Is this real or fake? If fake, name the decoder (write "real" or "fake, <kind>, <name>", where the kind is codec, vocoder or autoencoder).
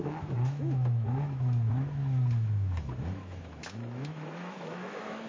fake, autoencoder, DAC-VAE